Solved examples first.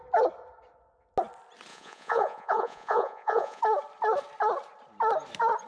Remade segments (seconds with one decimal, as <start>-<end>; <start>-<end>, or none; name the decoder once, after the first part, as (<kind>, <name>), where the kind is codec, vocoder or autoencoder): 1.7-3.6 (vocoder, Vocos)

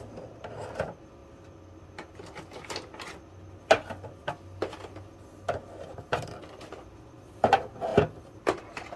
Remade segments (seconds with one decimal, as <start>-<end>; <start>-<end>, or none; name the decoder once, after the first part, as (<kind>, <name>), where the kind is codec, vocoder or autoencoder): none

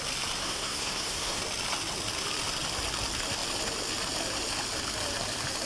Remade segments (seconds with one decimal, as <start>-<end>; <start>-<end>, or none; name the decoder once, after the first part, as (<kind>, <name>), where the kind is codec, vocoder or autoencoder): 0.4-1.4 (codec, SNAC)

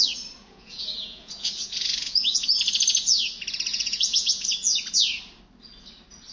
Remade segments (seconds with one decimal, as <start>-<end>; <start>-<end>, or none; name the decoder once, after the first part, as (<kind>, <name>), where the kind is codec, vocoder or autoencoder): 0.4-2.6 (vocoder, Vocos); 3.7-4.8

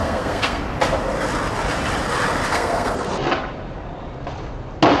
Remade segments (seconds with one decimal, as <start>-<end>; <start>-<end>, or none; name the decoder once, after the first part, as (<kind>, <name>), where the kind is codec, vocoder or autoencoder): 0.0-0.6 (codec, SNAC); 2.5-3.1

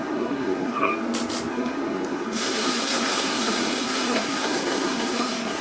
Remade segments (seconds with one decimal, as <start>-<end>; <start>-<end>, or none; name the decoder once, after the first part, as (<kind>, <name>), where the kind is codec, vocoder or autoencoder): 0.0-0.9 (codec, SNAC); 1.5-5.6

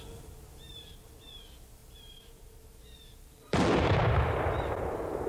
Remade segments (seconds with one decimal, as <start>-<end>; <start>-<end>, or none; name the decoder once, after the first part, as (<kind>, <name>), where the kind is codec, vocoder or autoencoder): 1.8-5.3 (vocoder, BigVGAN v2)

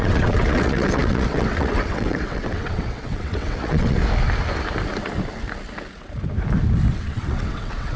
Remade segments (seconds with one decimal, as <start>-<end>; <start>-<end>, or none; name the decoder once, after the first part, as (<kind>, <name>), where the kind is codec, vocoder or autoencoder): 0.0-4.0 (vocoder, WaveNeXt); 6.9-8.0